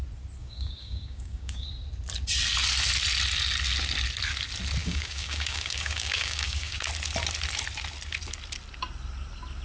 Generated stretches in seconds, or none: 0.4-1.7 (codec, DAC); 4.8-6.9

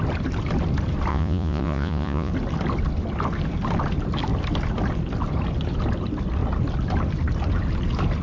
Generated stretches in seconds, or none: 1.1-2.3 (vocoder, Vocos)

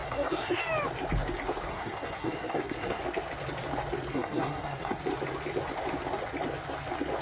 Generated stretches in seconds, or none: 0.0-0.6 (codec, SNAC); 1.7-3.0; 4.1-5.0

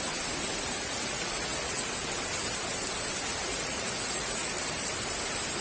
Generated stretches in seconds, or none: 0.7-1.9 (vocoder, Vocos); 3.5-4.5

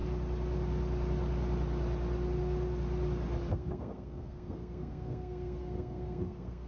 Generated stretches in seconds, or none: 3.5-6.7 (codec, SNAC)

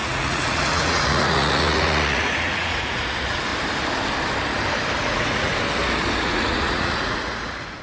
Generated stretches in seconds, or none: 0.0-3.5 (vocoder, Vocos); 5.0-5.5; 6.2-7.8